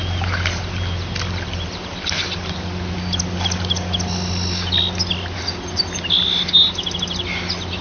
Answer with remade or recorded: recorded